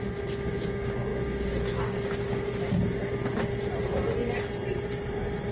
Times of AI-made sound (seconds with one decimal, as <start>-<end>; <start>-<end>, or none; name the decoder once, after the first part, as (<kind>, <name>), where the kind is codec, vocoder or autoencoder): none